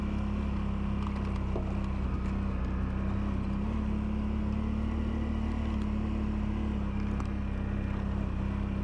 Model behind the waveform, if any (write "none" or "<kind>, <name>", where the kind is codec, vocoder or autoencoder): none